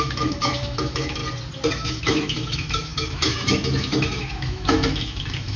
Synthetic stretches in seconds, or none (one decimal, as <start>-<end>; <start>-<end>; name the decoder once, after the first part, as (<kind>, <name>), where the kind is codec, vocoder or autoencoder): 0.0-1.2 (autoencoder, DAC-VAE); 1.7-5.6